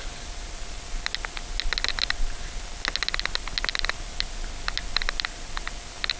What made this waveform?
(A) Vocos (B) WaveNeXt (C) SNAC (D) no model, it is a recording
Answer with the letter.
D